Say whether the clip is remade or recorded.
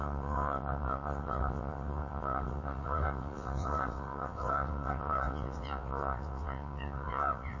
remade